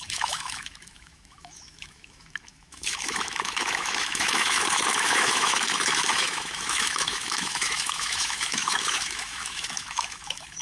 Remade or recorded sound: remade